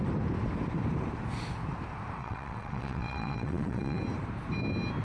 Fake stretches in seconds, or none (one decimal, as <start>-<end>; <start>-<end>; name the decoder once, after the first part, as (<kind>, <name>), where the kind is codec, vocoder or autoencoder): 2.2-4.0 (vocoder, WaveNeXt)